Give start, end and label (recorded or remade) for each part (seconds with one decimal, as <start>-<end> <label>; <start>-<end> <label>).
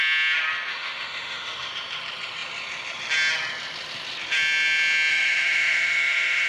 0.0-0.7 recorded; 0.7-1.7 remade; 1.7-5.1 recorded; 5.1-6.5 remade